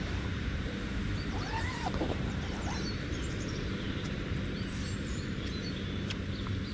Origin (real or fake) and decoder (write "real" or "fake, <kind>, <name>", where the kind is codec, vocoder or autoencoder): fake, vocoder, BigVGAN v2